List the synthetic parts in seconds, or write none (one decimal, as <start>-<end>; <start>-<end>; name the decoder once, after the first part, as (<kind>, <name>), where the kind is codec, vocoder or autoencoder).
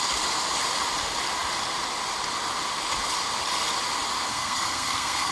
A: 4.3-5.3 (codec, SNAC)